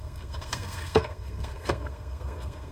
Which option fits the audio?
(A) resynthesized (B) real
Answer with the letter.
A